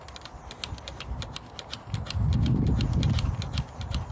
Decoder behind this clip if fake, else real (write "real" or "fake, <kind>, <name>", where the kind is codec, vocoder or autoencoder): real